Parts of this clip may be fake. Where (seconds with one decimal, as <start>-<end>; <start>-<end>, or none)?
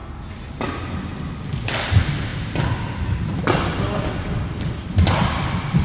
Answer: none